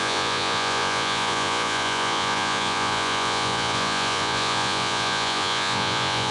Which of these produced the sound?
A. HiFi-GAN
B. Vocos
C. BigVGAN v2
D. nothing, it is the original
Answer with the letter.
B